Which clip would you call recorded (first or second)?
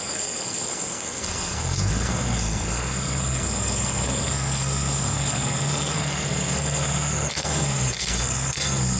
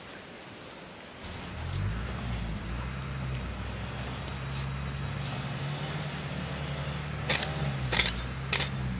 second